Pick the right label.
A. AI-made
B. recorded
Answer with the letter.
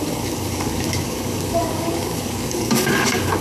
A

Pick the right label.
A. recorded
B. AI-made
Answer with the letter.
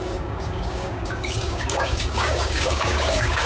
B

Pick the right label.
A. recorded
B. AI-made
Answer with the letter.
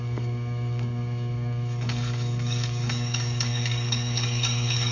B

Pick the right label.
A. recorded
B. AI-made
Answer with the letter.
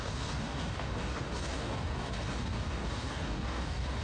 B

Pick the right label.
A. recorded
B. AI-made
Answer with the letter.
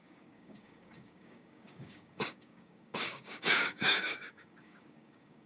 B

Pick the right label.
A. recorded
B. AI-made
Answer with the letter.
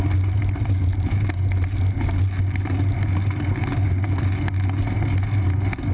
A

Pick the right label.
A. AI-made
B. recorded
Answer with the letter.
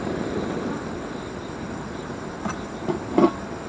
B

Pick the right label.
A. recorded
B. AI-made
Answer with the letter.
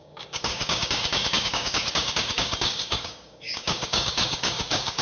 B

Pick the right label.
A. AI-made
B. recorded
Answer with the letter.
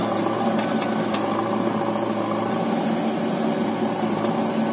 B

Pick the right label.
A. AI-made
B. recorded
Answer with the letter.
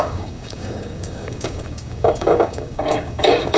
A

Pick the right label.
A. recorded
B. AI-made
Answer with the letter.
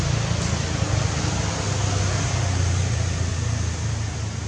A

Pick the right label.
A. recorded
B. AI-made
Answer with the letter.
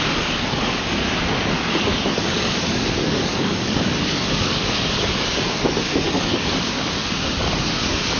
B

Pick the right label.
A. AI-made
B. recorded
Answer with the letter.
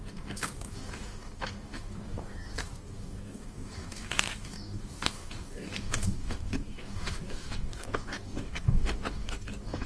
A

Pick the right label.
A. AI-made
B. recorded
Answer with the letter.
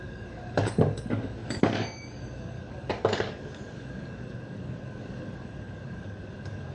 A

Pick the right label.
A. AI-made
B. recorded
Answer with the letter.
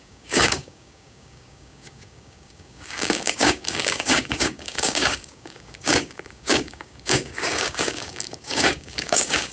A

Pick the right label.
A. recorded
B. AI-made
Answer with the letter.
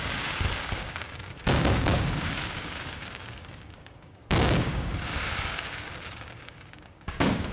B